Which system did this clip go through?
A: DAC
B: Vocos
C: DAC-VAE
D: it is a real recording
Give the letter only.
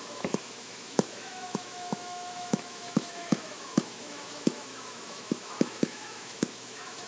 C